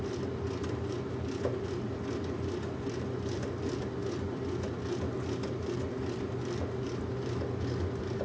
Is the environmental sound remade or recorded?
recorded